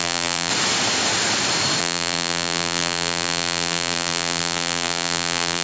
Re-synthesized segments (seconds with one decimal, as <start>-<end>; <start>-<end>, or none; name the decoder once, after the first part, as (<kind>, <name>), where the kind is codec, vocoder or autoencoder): 0.0-0.5 (vocoder, BigVGAN v2); 1.8-5.6